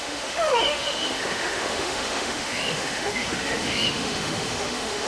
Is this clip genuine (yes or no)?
no